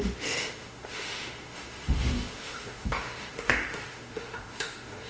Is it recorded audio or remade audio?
remade